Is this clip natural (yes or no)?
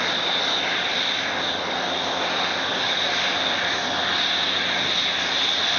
yes